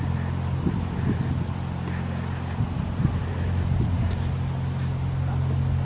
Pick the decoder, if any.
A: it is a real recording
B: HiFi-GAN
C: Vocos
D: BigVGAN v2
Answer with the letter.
A